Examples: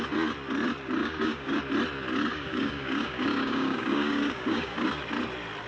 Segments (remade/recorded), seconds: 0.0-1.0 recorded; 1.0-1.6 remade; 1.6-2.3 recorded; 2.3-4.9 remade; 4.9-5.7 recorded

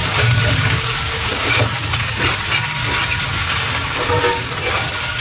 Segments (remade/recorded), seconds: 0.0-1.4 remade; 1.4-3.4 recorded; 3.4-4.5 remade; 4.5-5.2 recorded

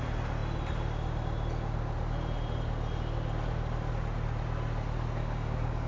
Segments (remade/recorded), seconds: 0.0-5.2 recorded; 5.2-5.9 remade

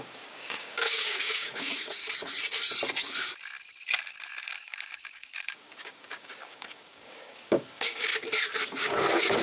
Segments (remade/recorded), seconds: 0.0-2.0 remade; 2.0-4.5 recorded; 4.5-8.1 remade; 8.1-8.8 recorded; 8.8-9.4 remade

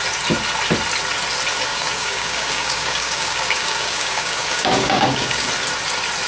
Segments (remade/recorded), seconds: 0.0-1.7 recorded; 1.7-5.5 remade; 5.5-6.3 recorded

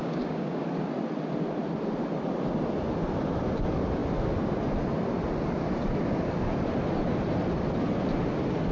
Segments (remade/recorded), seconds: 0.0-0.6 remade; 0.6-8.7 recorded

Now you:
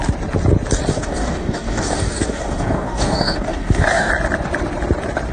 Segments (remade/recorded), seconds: 0.0-0.9 recorded; 0.9-4.1 remade; 4.1-5.3 recorded